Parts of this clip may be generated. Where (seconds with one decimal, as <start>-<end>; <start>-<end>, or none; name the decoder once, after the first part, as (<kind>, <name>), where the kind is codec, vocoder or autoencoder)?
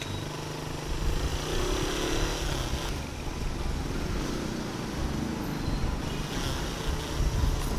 none